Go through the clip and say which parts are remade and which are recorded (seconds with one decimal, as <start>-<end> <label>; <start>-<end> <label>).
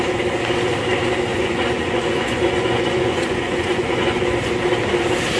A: 0.0-1.3 recorded; 1.3-4.5 remade; 4.5-5.4 recorded